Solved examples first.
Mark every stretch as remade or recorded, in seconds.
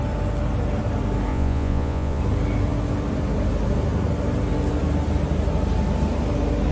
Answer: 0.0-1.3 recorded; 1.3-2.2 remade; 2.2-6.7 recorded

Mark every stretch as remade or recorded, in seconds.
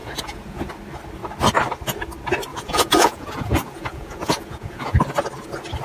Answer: 0.0-0.7 remade; 0.7-2.5 recorded; 2.5-5.0 remade; 5.0-5.8 recorded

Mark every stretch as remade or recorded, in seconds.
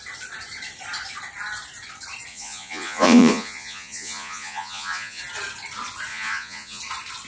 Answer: 0.0-2.3 recorded; 2.3-5.2 remade; 5.2-6.1 recorded; 6.1-6.8 remade; 6.8-7.3 recorded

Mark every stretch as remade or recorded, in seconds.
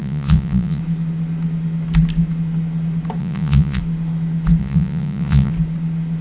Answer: 0.0-0.8 remade; 0.8-3.2 recorded; 3.2-3.8 remade; 3.8-4.6 recorded; 4.6-5.5 remade; 5.5-6.2 recorded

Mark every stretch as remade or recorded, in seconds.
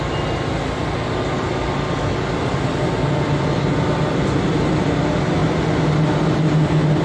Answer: 0.0-7.0 recorded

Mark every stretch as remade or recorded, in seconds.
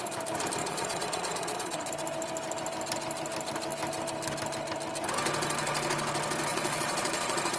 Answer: 0.0-0.6 recorded; 0.6-1.9 remade; 1.9-6.5 recorded; 6.5-7.6 remade